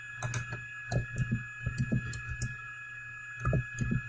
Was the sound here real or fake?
real